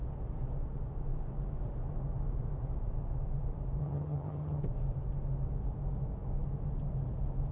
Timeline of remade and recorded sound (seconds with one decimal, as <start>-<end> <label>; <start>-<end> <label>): 0.0-3.8 recorded; 3.8-4.6 remade; 4.6-7.5 recorded